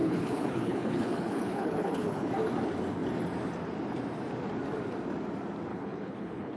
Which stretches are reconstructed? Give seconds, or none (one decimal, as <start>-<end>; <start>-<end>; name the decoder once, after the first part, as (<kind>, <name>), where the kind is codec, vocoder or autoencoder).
0.0-2.3 (codec, HILCodec); 5.7-6.6